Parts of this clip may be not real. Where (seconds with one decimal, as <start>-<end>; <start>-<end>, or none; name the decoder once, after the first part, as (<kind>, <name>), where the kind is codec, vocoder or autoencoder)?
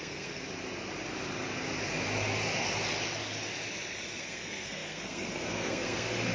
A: 0.0-0.4 (codec, SNAC); 4.2-6.3